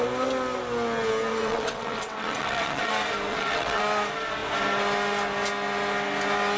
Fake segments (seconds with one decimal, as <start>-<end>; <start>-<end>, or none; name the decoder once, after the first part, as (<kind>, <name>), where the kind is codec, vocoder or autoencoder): 1.3-2.9 (vocoder, WaveNeXt); 3.3-3.8